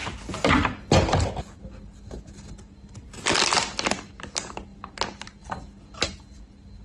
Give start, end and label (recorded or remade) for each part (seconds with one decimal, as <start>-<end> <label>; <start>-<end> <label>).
0.0-6.8 recorded